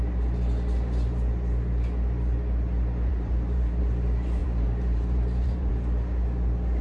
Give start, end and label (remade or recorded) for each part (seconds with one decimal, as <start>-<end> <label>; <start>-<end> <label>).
0.0-3.1 recorded; 3.1-3.8 remade; 3.8-4.4 recorded; 4.4-5.7 remade; 5.7-6.8 recorded